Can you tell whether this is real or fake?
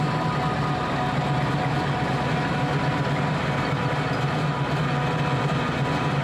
real